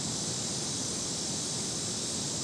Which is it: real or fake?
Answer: real